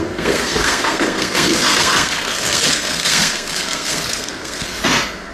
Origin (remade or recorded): remade